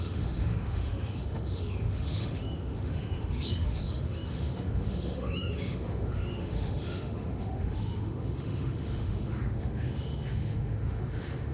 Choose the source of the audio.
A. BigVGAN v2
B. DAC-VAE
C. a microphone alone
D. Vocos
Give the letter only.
B